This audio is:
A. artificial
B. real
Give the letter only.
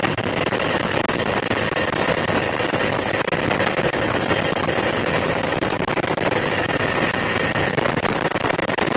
B